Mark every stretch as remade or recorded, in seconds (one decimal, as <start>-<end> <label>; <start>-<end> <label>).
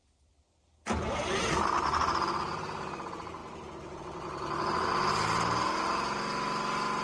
0.0-7.0 recorded